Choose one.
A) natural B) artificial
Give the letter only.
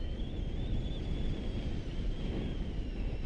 A